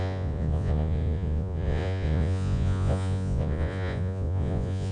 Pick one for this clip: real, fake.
fake